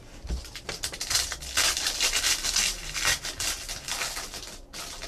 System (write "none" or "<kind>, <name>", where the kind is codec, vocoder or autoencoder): none